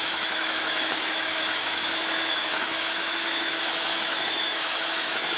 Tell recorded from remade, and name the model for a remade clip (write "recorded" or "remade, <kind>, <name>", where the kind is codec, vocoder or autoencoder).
remade, autoencoder, DAC-VAE